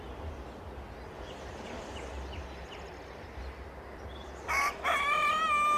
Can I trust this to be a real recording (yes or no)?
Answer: yes